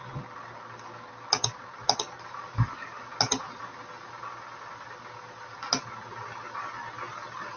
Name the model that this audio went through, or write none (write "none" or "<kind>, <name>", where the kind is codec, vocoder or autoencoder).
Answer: none